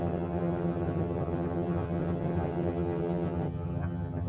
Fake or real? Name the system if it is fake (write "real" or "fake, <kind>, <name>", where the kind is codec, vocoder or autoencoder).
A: fake, vocoder, HiFi-GAN